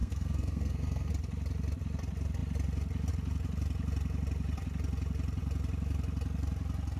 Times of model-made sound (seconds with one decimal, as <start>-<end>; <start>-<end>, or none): 0.0-1.1